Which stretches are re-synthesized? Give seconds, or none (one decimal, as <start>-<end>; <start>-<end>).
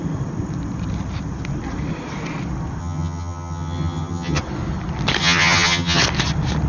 2.8-4.4; 5.2-6.0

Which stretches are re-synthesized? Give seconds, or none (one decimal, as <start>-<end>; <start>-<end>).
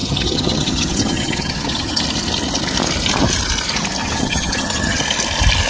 0.0-2.0; 4.0-5.0